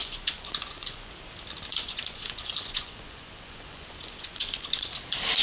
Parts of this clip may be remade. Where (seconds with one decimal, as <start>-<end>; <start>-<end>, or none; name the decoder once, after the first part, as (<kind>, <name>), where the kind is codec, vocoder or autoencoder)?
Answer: 0.0-1.1 (vocoder, Vocos); 1.7-4.9